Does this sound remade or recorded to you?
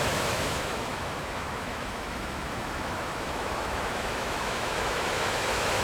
remade